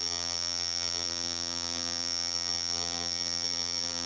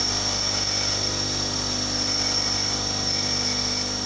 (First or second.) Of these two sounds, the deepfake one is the first